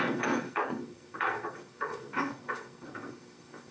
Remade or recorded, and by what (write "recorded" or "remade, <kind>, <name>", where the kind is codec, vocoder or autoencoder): remade, codec, SNAC